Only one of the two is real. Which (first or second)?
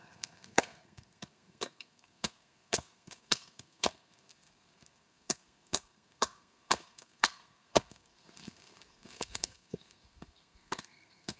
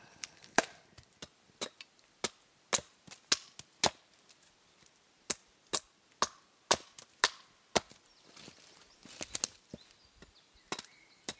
second